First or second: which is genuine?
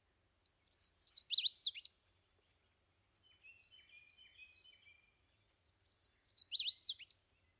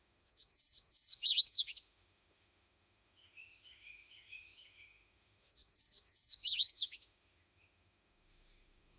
first